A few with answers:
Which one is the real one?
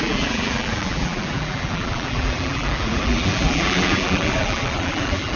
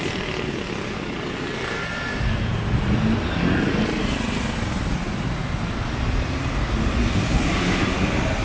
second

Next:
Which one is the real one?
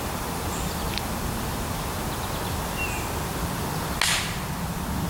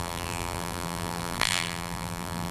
first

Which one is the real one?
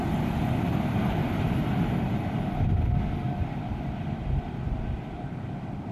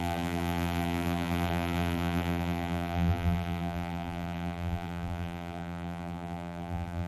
first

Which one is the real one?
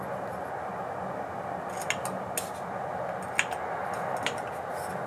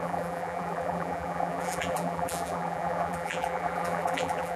first